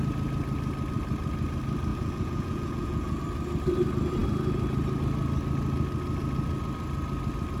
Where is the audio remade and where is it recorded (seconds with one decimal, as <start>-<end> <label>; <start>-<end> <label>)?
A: 0.0-1.9 recorded; 1.9-3.2 remade; 3.2-7.6 recorded

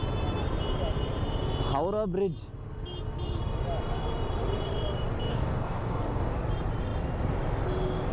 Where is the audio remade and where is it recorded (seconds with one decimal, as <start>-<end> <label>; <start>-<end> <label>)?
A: 0.0-5.3 recorded; 5.3-6.3 remade; 6.3-8.1 recorded

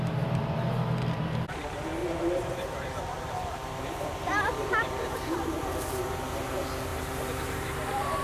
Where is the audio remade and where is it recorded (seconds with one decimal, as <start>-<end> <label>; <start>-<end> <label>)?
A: 0.0-2.0 recorded; 2.0-6.2 remade; 6.2-6.9 recorded; 6.9-8.2 remade

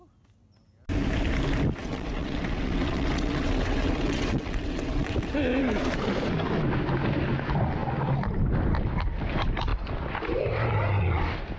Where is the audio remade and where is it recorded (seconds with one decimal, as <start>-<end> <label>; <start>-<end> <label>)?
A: 0.0-1.8 recorded; 1.8-5.3 remade; 5.3-11.6 recorded

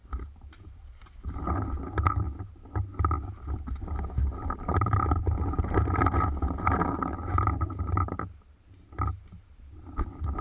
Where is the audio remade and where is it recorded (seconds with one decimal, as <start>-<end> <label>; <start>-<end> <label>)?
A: 0.0-1.4 remade; 1.4-4.2 recorded; 4.2-8.2 remade; 8.2-10.4 recorded

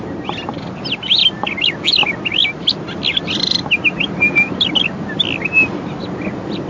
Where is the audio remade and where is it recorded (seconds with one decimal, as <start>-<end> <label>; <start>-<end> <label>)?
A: 0.0-6.7 recorded

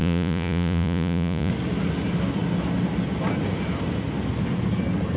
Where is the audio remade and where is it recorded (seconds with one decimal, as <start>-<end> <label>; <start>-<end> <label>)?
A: 0.0-1.5 remade; 1.5-5.2 recorded